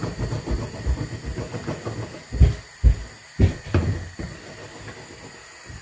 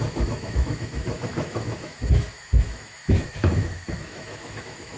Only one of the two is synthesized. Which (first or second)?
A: second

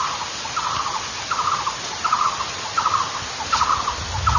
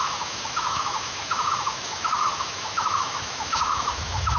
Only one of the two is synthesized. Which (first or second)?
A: second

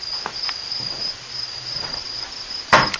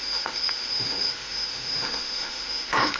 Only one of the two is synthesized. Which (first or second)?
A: second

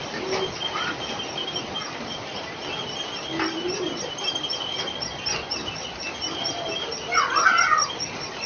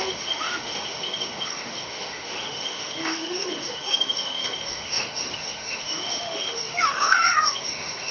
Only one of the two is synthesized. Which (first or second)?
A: second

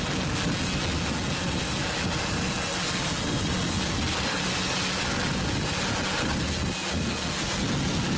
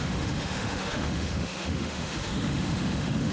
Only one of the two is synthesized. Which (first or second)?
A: second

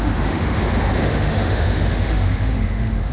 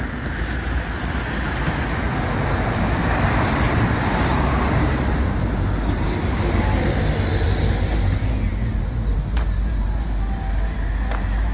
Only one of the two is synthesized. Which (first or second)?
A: first